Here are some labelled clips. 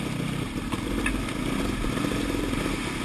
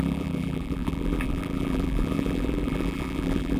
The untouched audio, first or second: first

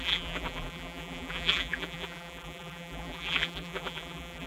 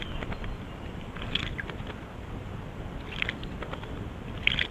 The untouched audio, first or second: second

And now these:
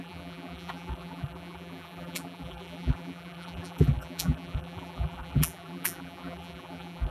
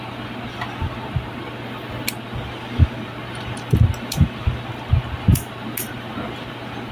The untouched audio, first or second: second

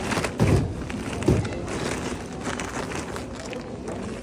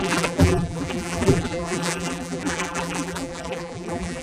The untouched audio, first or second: first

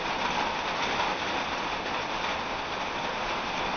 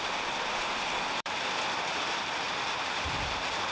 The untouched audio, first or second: first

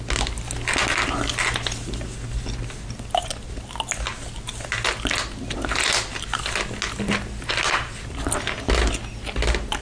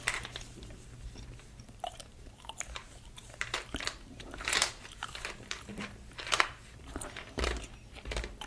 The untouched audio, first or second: first